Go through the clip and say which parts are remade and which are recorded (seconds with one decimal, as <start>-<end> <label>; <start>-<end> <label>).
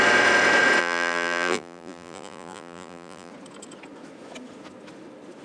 0.0-0.8 recorded; 0.8-3.3 remade; 3.3-5.4 recorded